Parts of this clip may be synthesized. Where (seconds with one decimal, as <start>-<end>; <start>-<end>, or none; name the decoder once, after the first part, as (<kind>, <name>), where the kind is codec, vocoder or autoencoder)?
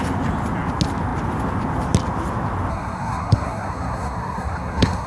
2.7-5.1 (codec, SNAC)